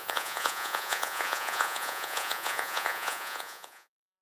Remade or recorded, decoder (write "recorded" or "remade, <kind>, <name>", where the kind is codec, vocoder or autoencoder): remade, vocoder, Vocos